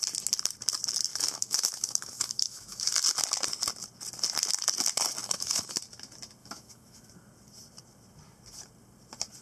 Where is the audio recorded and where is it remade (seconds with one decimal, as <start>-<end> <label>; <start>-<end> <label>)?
0.0-1.1 recorded; 1.1-2.8 remade; 2.8-5.2 recorded; 5.2-5.8 remade; 5.8-6.4 recorded; 6.4-7.1 remade; 7.1-9.4 recorded